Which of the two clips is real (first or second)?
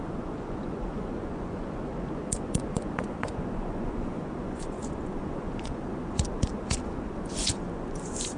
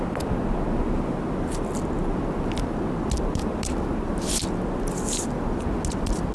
second